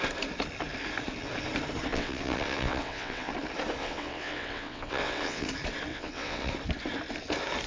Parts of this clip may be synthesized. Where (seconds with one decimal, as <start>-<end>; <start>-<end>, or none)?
1.9-3.3; 3.8-5.5; 5.9-6.5